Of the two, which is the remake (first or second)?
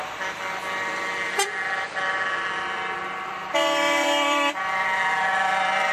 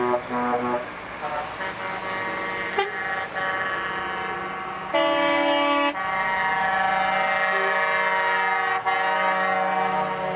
first